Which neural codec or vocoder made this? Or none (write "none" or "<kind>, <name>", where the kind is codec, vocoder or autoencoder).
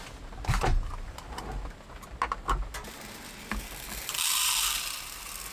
none